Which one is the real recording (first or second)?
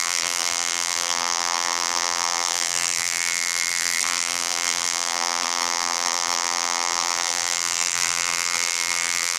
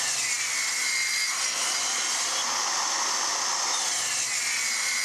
second